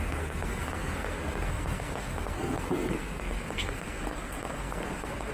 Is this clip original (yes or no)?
no